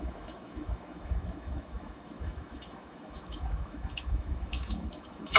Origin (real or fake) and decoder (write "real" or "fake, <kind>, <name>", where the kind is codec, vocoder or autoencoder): fake, autoencoder, DAC-VAE